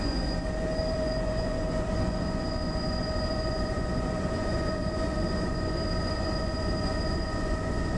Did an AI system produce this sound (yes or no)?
yes